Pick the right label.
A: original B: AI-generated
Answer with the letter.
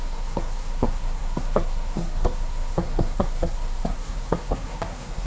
B